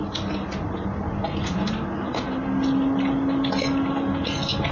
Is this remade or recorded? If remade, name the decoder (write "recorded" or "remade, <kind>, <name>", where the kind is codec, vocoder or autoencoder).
recorded